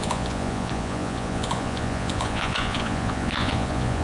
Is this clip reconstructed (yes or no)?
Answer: yes